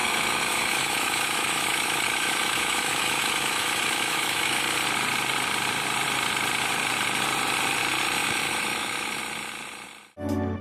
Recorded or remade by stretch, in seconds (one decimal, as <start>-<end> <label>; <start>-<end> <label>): 0.0-4.6 remade; 4.6-8.2 recorded; 8.2-9.2 remade; 9.2-10.6 recorded